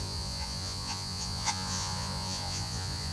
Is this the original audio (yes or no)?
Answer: no